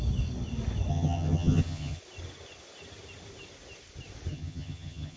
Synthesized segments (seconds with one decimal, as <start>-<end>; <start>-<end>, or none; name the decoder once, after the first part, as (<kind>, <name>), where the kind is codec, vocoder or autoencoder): 0.9-2.0 (vocoder, HiFi-GAN); 4.3-5.2